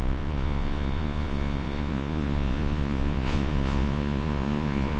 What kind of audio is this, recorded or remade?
remade